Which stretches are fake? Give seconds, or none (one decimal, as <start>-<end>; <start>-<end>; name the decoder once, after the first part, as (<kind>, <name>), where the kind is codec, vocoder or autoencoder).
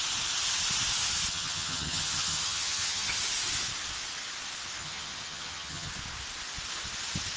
1.3-3.2 (vocoder, HiFi-GAN); 4.8-5.9